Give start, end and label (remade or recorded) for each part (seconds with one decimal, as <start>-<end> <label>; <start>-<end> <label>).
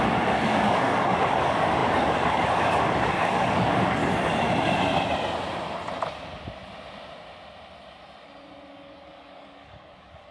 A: 0.0-4.0 remade; 4.0-8.7 recorded; 8.7-10.3 remade